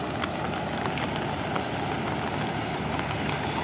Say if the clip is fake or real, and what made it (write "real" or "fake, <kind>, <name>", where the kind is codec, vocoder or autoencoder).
real